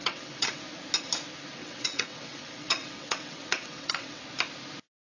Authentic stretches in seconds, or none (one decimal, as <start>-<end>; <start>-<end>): 0.6-1.6; 4.2-5.2